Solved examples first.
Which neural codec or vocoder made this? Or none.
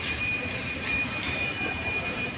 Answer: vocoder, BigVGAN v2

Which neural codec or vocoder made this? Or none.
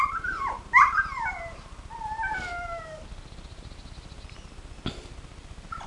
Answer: none